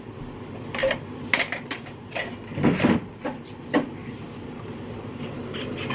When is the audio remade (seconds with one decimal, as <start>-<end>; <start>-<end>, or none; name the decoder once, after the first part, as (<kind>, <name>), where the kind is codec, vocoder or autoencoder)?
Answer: 0.8-2.1 (vocoder, BigVGAN v2); 4.0-5.2